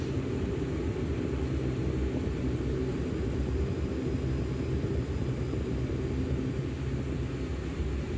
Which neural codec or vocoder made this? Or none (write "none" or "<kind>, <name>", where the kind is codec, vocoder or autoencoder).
none